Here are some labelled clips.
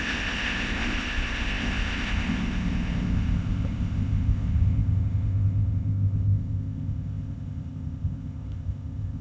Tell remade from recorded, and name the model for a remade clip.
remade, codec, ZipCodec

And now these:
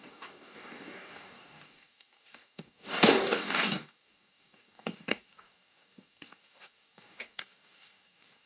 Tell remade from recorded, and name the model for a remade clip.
remade, codec, DAC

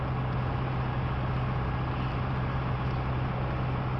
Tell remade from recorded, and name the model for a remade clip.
recorded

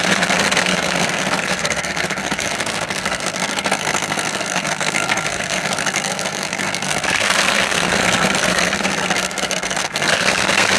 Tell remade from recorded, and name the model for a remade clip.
remade, codec, SNAC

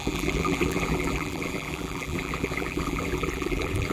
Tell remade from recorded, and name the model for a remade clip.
remade, vocoder, BigVGAN v2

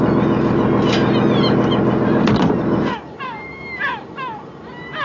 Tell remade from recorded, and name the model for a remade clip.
recorded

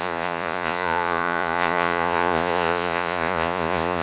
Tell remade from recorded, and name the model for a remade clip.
remade, vocoder, Vocos